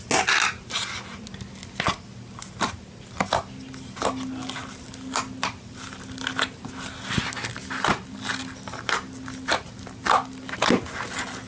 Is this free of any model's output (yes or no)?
yes